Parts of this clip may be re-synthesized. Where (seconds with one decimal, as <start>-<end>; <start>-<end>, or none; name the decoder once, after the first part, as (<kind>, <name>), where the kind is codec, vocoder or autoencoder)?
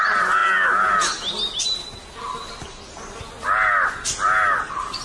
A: none